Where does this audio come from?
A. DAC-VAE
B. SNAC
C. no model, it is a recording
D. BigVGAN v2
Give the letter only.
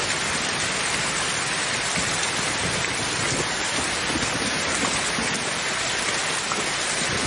C